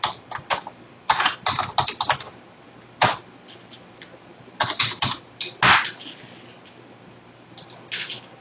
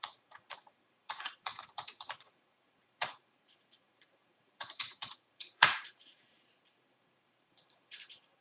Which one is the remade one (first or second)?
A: second